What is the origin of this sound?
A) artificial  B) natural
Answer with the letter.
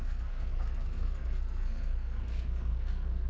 A